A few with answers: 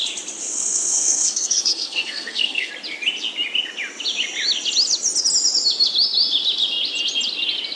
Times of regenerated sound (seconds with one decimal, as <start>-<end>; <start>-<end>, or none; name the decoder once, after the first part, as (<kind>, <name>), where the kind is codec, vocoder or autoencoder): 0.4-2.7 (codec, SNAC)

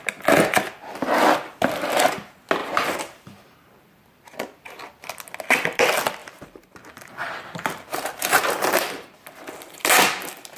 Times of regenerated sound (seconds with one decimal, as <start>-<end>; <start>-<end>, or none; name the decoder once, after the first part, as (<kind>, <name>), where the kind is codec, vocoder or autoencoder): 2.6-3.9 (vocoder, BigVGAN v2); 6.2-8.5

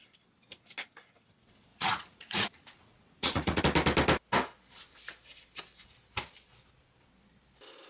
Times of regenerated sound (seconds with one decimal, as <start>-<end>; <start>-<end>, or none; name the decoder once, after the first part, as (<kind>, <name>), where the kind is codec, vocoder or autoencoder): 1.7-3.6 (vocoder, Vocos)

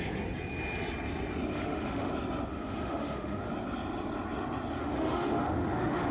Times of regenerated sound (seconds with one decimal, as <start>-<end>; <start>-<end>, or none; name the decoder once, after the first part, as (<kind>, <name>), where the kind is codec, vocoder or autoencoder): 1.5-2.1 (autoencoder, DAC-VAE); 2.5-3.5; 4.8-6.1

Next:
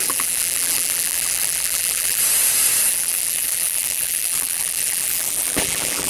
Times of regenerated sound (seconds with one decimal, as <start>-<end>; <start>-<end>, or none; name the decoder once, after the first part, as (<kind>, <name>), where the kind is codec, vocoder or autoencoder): 0.0-2.2 (vocoder, BigVGAN v2); 2.9-6.1

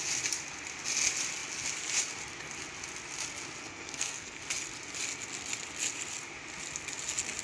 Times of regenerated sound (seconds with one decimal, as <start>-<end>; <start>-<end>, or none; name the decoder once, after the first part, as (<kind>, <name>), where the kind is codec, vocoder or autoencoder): 3.6-4.4 (codec, SNAC)